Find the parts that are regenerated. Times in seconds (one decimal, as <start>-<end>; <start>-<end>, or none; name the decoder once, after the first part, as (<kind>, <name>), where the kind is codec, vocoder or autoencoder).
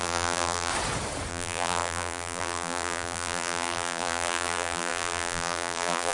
0.0-0.7 (vocoder, BigVGAN v2); 1.3-6.1